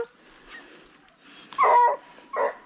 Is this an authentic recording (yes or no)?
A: yes